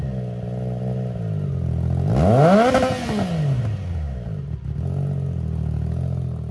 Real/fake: real